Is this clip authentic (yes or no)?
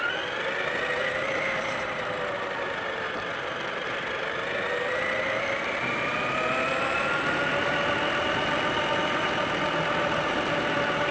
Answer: yes